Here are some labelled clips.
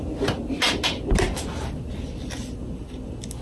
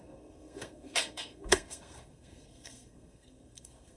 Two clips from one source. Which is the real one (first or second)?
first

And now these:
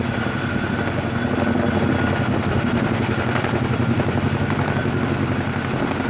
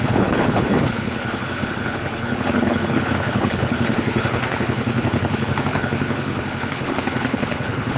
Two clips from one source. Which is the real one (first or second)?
first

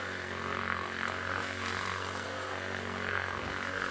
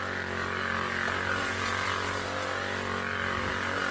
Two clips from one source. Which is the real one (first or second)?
second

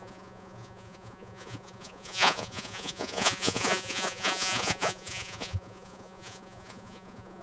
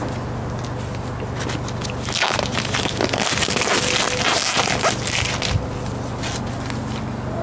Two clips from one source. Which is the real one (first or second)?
second